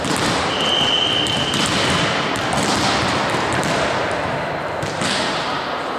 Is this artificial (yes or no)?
no